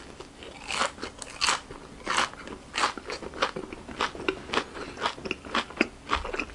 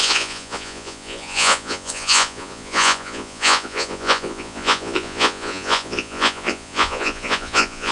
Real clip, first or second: first